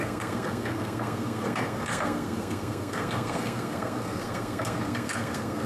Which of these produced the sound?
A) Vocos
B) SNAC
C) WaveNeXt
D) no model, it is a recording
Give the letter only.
B